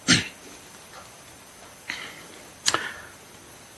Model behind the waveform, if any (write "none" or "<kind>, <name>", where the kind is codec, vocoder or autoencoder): none